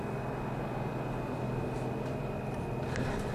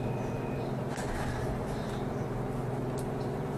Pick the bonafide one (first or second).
first